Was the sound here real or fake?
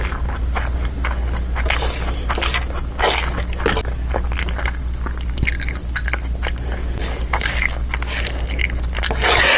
real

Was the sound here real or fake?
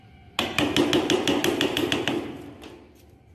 real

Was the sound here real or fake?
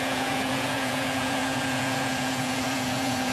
fake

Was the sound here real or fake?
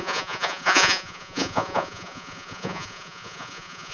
fake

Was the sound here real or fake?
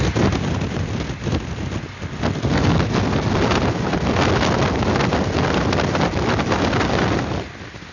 real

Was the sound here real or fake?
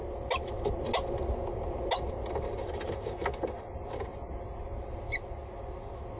real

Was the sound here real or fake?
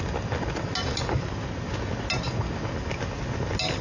real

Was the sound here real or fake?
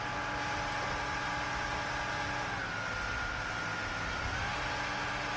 real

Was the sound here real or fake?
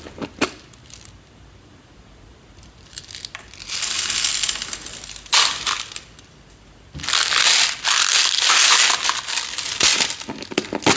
real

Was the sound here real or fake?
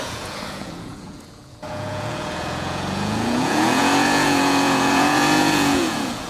fake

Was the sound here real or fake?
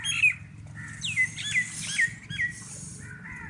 real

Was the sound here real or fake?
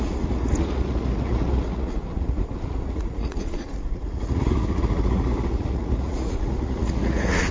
fake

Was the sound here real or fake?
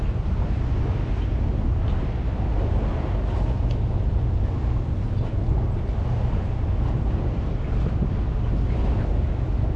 real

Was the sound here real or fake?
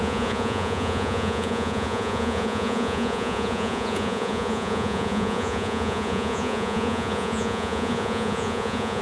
fake